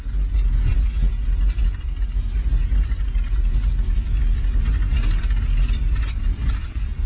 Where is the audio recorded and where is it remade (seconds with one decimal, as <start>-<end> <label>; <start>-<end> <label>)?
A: 0.0-7.1 recorded